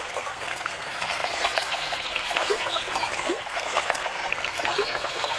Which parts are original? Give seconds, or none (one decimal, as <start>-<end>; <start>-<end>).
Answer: none